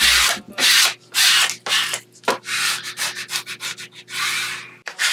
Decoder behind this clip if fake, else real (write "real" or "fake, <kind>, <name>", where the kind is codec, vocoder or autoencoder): real